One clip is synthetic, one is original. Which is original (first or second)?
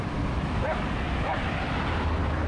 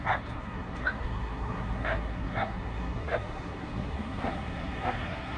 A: first